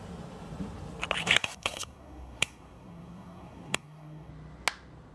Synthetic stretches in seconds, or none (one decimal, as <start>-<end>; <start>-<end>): 1.2-4.3